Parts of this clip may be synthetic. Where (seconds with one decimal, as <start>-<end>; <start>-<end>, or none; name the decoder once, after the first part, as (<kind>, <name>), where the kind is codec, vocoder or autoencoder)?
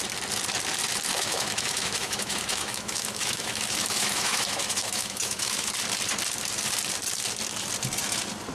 1.1-5.7 (autoencoder, DAC-VAE)